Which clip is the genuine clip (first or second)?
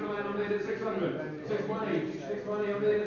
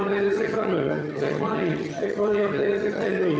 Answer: first